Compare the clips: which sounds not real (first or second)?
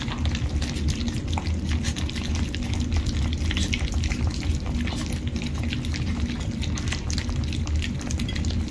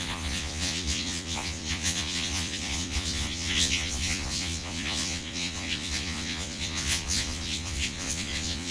second